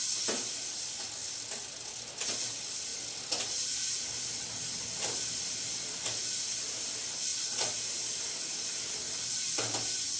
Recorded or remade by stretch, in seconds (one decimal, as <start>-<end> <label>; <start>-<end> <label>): 0.0-10.2 recorded